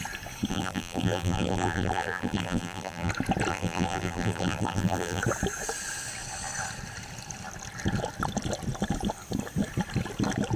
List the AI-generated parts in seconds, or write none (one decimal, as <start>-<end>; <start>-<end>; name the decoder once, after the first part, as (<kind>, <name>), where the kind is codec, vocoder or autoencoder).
0.5-3.1 (vocoder, BigVGAN v2); 3.5-5.2

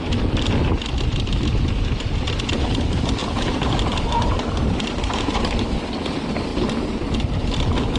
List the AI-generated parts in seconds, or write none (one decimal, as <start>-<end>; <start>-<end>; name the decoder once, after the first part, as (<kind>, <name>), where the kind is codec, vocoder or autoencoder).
3.2-5.8 (vocoder, BigVGAN v2); 6.5-7.4

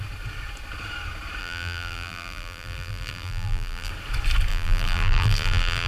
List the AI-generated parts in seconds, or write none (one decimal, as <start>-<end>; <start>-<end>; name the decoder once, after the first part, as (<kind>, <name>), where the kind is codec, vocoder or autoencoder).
1.4-3.9 (vocoder, BigVGAN v2); 4.5-5.9

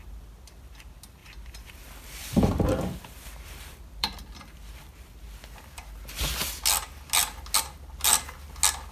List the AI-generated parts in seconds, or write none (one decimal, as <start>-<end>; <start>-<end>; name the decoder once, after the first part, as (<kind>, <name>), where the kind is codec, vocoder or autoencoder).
1.2-4.8 (vocoder, BigVGAN v2)